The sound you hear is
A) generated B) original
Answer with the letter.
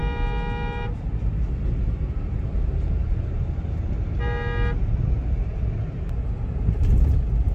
B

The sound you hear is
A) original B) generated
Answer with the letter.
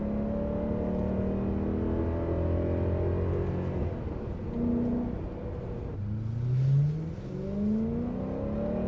A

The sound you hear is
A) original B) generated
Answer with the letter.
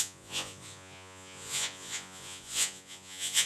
B